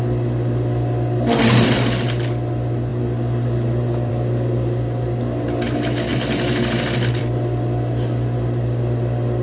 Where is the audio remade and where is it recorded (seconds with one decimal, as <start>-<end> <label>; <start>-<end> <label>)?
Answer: 0.0-9.4 recorded